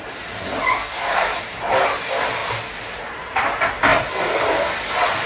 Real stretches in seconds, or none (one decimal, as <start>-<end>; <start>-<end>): 0.0-0.7; 1.4-5.3